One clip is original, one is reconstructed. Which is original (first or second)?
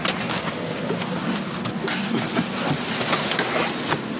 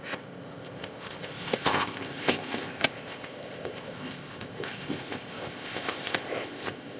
first